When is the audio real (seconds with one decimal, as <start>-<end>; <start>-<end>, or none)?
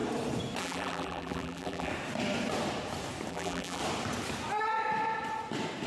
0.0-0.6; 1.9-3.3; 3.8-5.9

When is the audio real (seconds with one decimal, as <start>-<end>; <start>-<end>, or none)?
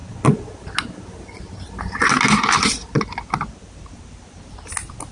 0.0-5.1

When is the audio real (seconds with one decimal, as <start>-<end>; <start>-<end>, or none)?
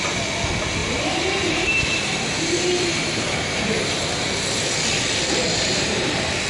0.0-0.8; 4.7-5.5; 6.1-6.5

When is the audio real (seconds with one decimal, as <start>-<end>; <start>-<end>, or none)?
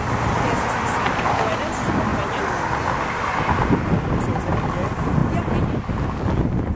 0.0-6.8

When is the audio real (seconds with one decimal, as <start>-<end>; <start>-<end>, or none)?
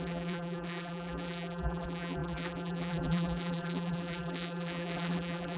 none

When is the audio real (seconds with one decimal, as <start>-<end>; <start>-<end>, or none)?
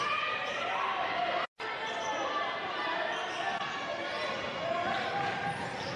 0.0-2.1; 2.7-6.0